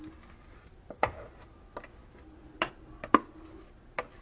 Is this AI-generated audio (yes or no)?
no